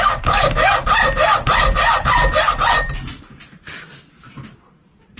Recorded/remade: recorded